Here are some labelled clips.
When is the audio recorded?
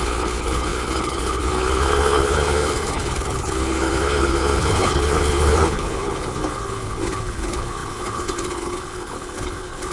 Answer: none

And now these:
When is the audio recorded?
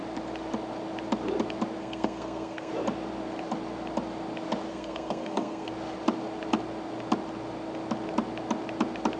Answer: 0.0-1.8; 2.7-4.7; 5.7-9.2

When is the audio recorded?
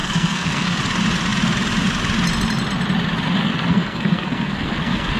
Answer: 0.8-3.4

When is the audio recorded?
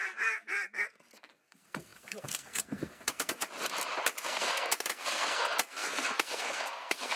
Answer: 3.4-4.2